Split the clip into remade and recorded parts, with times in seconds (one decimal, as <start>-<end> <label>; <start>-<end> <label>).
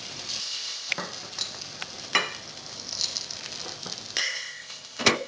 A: 0.0-0.4 recorded; 0.4-0.9 remade; 0.9-4.2 recorded; 4.2-5.3 remade